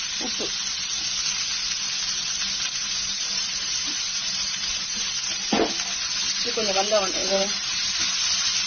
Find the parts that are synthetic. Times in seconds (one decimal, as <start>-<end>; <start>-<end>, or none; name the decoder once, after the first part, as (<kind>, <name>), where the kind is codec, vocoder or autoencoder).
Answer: 2.8-5.2 (vocoder, BigVGAN v2); 7.2-8.0

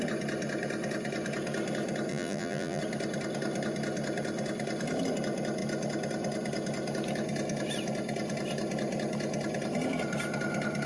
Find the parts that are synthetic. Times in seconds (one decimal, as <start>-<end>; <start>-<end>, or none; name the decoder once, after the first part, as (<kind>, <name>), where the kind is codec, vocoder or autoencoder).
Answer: 2.1-2.8 (vocoder, BigVGAN v2)

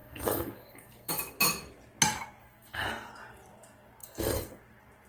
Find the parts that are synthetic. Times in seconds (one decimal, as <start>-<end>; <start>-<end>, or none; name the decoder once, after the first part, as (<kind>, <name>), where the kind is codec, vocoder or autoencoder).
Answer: 0.0-1.1 (codec, SNAC); 2.4-3.1; 4.0-4.6

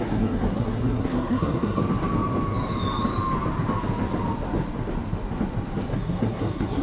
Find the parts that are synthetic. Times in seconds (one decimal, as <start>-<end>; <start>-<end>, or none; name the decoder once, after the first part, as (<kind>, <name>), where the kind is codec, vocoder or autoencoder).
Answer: 0.0-1.8 (codec, SNAC); 5.9-6.8

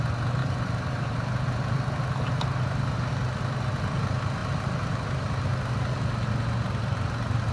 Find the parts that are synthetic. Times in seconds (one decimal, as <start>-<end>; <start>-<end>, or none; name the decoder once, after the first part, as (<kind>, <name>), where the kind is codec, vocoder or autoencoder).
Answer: 0.4-3.1 (vocoder, BigVGAN v2)

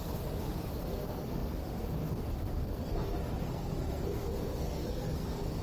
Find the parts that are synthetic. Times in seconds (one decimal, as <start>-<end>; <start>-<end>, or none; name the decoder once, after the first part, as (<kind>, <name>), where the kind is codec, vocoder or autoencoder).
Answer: 0.0-5.6 (codec, SNAC)

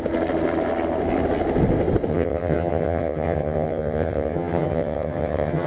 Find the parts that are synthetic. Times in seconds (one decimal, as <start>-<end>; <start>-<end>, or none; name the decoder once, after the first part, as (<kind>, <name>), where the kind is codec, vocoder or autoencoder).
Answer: 2.1-5.7 (vocoder, HiFi-GAN)